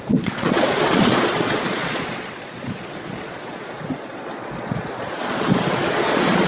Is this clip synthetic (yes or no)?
yes